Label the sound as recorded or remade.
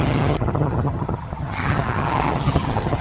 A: remade